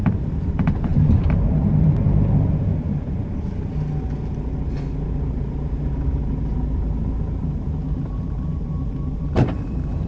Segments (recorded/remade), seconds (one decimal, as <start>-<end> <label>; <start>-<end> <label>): 0.0-0.9 remade; 0.9-1.5 recorded; 1.5-2.7 remade; 2.7-4.9 recorded; 4.9-10.1 remade